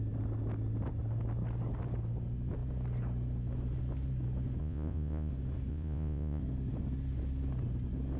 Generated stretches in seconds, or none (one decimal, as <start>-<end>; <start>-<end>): 4.6-5.3; 5.7-6.4